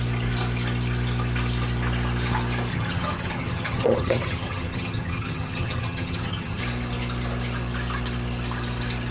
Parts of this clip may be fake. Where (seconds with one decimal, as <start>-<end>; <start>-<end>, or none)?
2.7-6.6